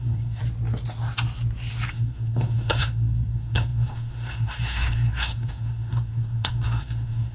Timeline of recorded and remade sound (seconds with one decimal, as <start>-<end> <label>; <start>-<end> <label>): 0.0-0.4 remade; 0.4-1.9 recorded; 1.9-7.3 remade